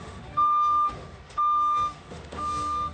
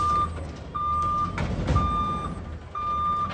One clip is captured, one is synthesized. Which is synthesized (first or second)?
first